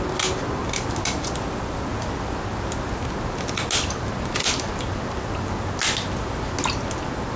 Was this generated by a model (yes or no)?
no